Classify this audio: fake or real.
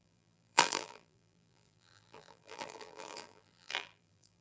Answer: fake